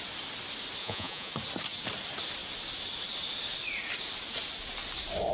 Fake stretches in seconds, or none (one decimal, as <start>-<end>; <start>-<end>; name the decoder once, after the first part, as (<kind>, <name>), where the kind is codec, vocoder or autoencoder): 0.8-1.3 (vocoder, Vocos)